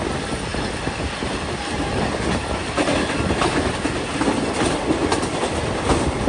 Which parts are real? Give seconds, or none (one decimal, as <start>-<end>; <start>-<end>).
0.0-6.3